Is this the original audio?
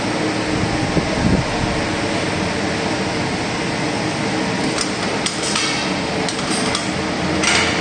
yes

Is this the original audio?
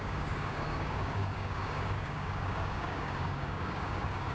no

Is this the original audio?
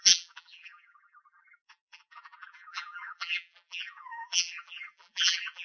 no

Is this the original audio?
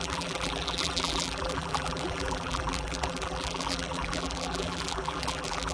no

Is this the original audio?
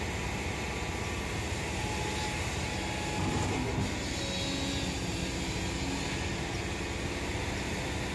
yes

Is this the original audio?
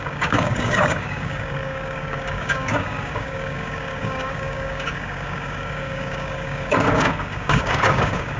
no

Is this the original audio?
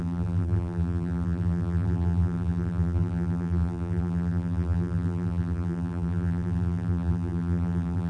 no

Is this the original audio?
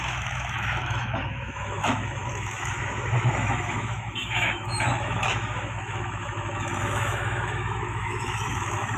no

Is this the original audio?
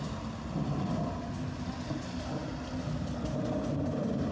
yes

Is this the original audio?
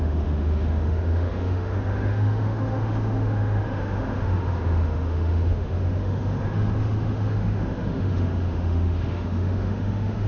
no